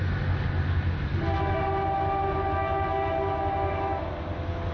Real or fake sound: real